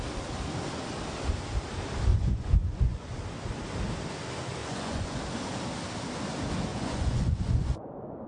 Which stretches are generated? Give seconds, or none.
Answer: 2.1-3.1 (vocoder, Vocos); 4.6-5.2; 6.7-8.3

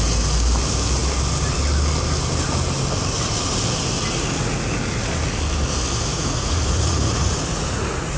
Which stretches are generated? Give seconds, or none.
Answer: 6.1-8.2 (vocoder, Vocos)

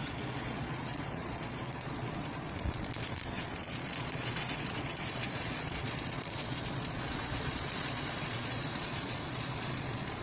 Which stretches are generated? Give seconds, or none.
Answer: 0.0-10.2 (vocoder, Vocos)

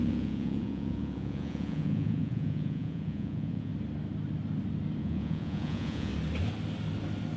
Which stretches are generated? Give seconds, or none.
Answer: 0.0-3.7 (vocoder, Vocos); 5.0-6.1